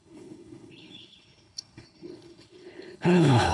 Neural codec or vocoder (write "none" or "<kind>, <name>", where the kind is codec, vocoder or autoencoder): codec, HILCodec